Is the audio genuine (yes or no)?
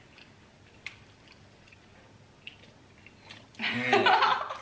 no